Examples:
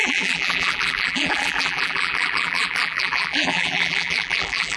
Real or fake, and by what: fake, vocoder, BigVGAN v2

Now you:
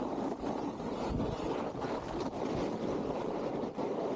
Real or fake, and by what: real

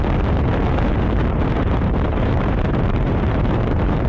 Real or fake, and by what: fake, vocoder, BigVGAN v2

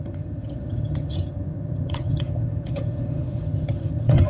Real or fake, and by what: fake, vocoder, HiFi-GAN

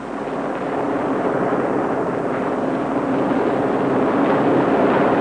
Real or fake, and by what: real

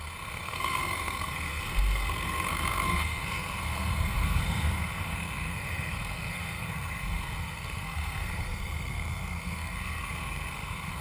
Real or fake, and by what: fake, codec, SNAC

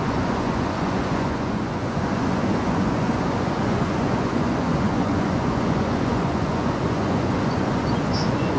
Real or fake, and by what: fake, vocoder, Vocos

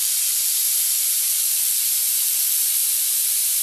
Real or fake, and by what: fake, vocoder, BigVGAN v2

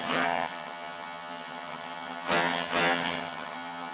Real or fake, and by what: fake, vocoder, HiFi-GAN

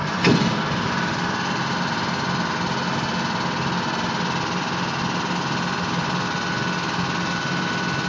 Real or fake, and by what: real